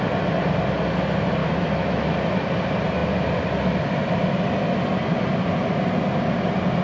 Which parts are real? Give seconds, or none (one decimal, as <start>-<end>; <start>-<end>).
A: 0.0-1.4; 2.1-6.8